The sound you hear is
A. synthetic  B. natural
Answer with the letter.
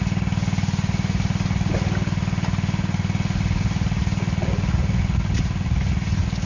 B